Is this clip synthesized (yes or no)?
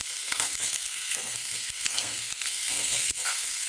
yes